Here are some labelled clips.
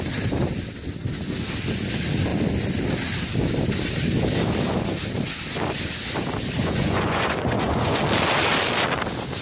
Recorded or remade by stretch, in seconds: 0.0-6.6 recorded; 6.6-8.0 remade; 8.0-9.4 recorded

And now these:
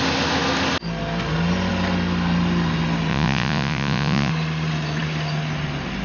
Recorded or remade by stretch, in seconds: 0.0-3.1 recorded; 3.1-4.3 remade; 4.3-6.0 recorded

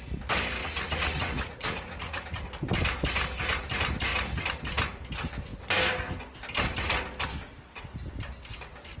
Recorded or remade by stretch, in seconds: 0.0-0.6 recorded; 0.6-2.4 remade; 2.4-9.0 recorded

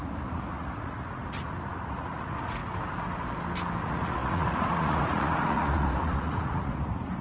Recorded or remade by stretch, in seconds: 0.0-2.6 remade; 2.6-3.8 recorded; 3.8-7.2 remade